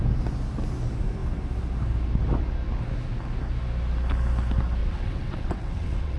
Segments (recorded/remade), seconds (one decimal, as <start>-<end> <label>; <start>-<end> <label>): 0.0-4.8 recorded; 4.8-6.2 remade